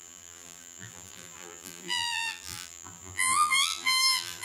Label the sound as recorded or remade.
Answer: remade